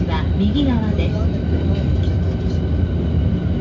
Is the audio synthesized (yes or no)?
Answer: no